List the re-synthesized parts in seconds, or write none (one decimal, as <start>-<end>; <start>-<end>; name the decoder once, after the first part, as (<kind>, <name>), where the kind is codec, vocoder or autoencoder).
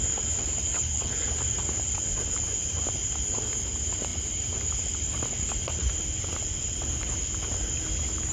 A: 0.7-1.2 (codec, HILCodec)